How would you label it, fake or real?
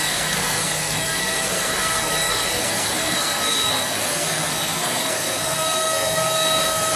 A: fake